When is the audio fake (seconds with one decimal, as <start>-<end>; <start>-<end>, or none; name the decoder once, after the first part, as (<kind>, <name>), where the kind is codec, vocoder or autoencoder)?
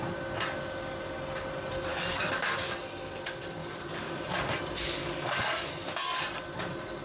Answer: 1.9-2.7 (codec, DAC); 3.6-4.3; 5.0-5.7